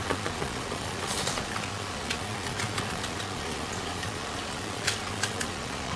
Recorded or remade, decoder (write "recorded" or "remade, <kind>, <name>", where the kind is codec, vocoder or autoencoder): remade, vocoder, Vocos